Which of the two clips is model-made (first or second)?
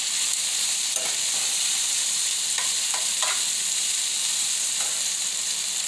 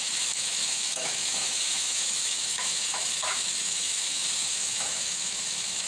second